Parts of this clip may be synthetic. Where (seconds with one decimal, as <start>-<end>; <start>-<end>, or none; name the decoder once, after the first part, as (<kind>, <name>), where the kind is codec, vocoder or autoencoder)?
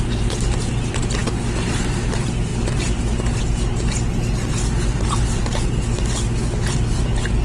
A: none